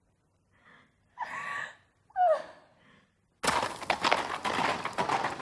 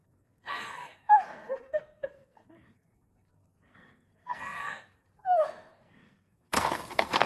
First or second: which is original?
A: first